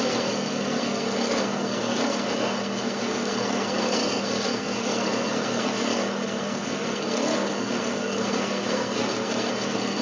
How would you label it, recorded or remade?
remade